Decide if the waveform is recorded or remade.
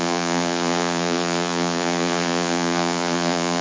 remade